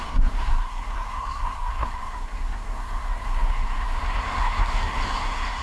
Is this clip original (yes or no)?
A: no